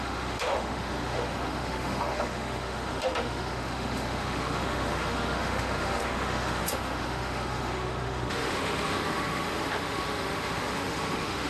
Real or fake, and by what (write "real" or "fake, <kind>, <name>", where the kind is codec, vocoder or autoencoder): fake, autoencoder, DAC-VAE